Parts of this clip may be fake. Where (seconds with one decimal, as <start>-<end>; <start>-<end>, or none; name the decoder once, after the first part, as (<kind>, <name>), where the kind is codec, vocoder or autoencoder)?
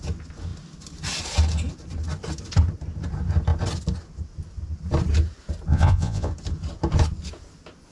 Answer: 5.7-6.3 (vocoder, Vocos)